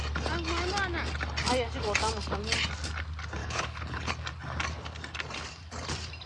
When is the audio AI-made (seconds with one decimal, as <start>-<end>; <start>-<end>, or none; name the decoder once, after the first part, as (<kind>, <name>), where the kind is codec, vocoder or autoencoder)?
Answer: 3.4-4.1 (codec, HILCodec)